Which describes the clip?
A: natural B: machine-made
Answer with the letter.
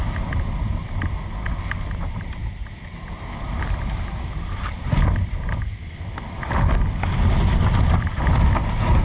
A